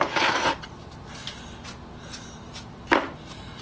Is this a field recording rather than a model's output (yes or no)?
yes